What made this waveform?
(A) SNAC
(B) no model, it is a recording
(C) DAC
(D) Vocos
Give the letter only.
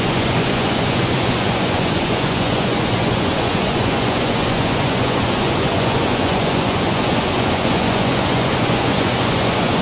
D